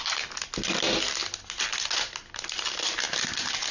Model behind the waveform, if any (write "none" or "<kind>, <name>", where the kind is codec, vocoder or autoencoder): none